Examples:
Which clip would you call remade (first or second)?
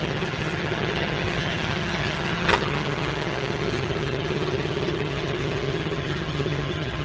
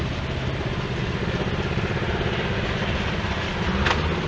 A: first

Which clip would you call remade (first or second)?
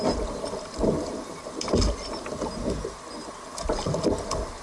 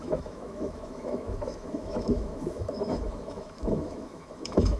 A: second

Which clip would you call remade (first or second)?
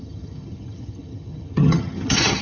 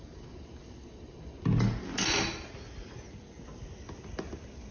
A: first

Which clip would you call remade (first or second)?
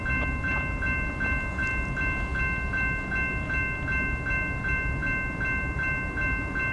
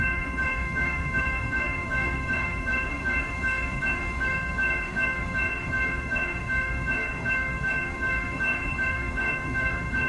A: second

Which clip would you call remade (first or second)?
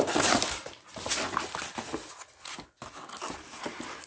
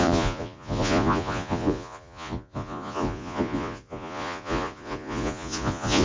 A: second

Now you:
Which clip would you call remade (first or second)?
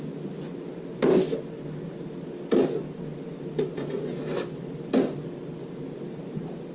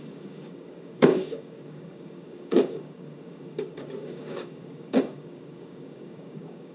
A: second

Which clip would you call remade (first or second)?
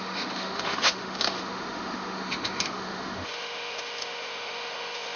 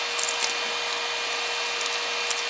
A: first